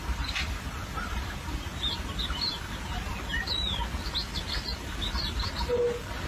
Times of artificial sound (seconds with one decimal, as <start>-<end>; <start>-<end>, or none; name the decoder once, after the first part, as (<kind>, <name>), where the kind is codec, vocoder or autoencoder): 0.0-3.1 (vocoder, BigVGAN v2); 4.7-5.5